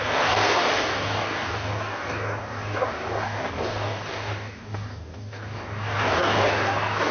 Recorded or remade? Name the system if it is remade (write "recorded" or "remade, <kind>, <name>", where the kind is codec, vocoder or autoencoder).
remade, codec, DAC